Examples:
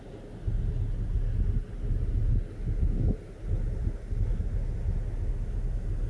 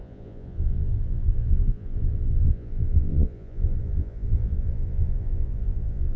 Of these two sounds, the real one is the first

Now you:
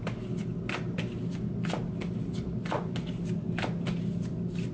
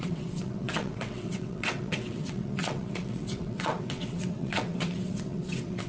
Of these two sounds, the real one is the first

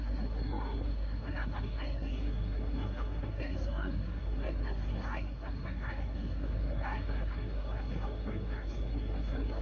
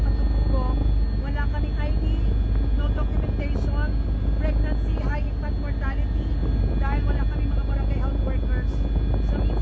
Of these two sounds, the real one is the second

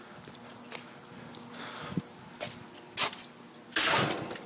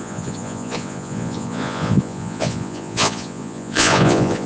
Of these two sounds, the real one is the first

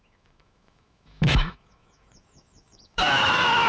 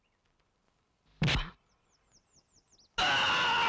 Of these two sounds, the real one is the second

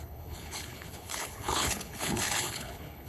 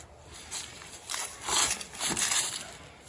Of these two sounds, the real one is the second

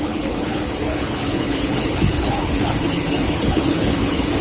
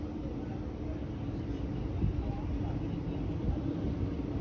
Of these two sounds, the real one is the second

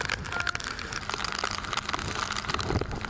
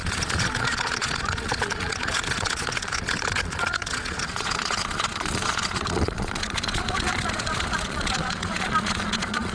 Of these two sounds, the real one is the first